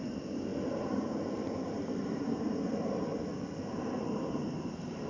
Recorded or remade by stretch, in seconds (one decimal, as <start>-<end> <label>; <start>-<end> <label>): 0.0-3.1 remade; 3.1-3.6 recorded; 3.6-5.1 remade